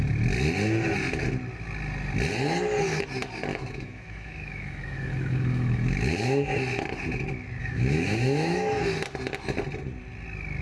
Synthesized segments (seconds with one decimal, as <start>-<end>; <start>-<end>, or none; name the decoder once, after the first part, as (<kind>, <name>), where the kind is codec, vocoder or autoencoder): 3.5-6.5 (autoencoder, DAC-VAE); 7.6-8.8